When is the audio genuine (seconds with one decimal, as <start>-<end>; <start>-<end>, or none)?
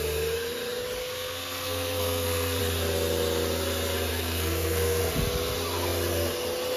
0.0-1.0; 2.6-4.1; 5.0-6.8